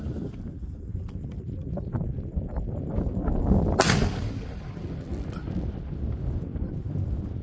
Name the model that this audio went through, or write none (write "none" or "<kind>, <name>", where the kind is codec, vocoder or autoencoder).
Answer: none